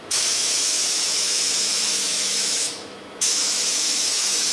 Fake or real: fake